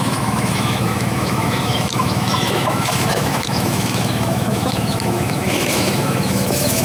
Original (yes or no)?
no